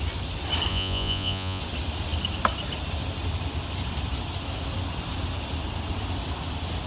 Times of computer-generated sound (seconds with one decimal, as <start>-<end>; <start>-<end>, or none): 0.7-1.6